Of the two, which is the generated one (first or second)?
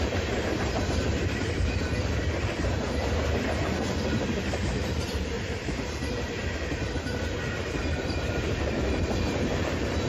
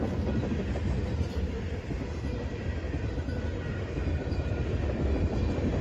first